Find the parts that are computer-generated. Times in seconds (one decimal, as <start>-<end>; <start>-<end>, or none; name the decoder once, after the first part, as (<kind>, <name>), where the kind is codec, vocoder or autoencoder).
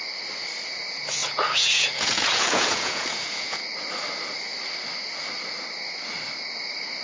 1.2-3.6 (vocoder, Vocos)